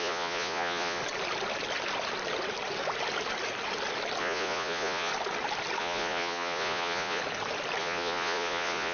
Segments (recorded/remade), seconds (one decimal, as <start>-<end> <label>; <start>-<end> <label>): 0.0-1.0 remade; 1.0-4.2 recorded; 4.2-5.1 remade; 5.1-5.8 recorded; 5.8-7.2 remade; 7.2-7.8 recorded; 7.8-8.9 remade